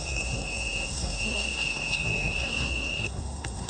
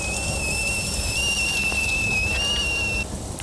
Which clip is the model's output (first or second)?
first